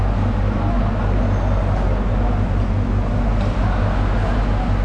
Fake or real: real